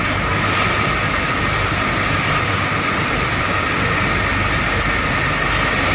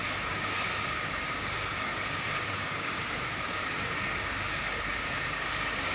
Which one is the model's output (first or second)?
second